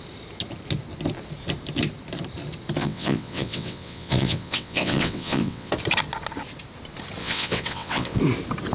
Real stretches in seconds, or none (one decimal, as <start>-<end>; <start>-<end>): 0.0-2.8; 5.7-7.2; 8.2-8.7